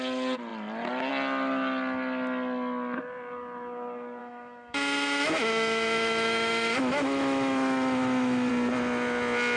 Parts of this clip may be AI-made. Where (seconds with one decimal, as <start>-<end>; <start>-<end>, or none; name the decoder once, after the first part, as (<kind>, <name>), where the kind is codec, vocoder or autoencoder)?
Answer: 4.2-8.5 (autoencoder, DAC-VAE)